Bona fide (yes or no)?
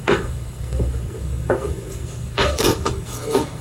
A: no